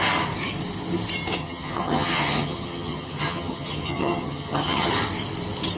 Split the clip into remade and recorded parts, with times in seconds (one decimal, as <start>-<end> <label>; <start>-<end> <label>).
0.0-1.4 recorded; 1.4-4.9 remade; 4.9-5.8 recorded

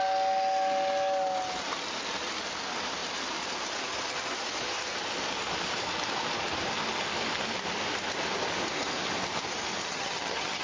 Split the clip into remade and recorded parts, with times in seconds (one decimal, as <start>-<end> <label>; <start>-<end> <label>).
0.0-9.8 recorded; 9.8-10.6 remade